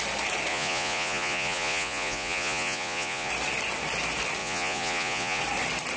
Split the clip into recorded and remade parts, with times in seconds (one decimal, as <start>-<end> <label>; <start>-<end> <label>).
0.0-0.5 recorded; 0.5-3.3 remade; 3.3-4.4 recorded; 4.4-5.4 remade; 5.4-6.0 recorded